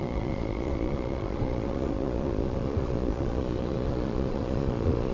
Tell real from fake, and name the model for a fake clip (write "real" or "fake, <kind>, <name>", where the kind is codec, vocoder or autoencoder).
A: fake, vocoder, Vocos